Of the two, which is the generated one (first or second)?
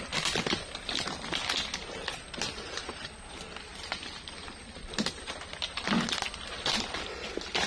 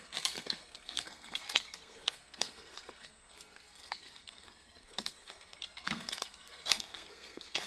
second